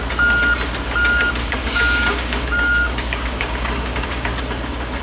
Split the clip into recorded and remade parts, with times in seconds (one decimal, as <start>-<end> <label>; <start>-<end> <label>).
0.0-1.4 recorded; 1.4-4.4 remade; 4.4-5.0 recorded